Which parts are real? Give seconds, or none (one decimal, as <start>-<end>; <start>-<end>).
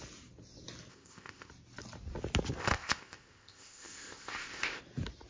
0.0-0.9; 1.5-2.6; 4.8-5.3